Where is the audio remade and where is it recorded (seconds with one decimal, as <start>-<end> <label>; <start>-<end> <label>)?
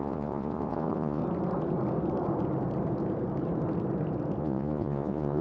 0.0-1.2 remade; 1.2-4.4 recorded; 4.4-5.4 remade